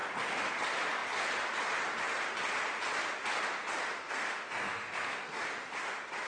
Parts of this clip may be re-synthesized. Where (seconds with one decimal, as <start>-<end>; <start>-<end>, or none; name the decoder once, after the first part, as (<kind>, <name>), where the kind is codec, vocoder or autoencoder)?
4.0-5.4 (codec, SNAC)